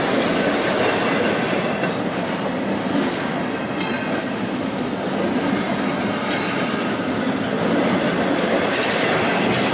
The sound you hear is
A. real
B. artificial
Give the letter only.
A